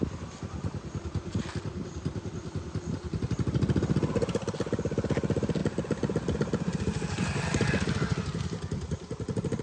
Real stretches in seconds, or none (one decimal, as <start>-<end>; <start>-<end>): 0.0-9.6